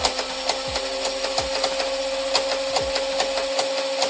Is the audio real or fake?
real